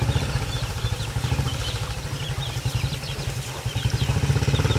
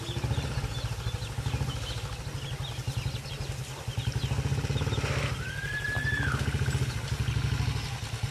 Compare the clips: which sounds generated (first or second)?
first